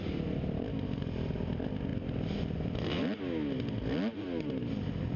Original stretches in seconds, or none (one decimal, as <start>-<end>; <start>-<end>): 0.0-5.2